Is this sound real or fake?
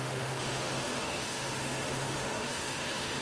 fake